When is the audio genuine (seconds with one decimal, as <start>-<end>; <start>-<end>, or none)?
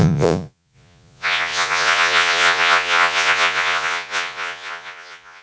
none